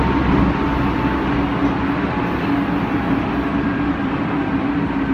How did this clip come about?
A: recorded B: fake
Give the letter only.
A